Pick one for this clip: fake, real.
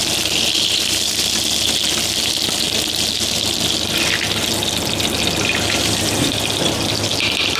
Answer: real